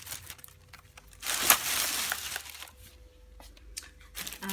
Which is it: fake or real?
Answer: real